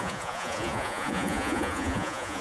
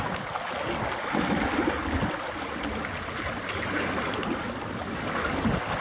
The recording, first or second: second